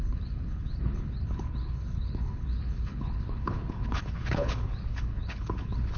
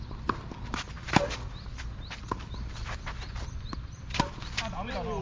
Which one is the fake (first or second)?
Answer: first